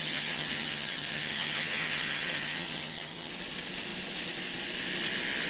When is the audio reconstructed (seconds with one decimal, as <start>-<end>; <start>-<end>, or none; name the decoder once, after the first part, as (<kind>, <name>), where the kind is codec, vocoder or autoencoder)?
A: 0.0-3.3 (vocoder, HiFi-GAN)